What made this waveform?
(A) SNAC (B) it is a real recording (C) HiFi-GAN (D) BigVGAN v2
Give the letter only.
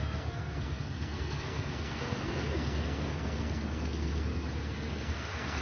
A